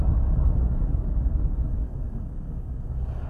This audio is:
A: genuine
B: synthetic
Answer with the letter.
B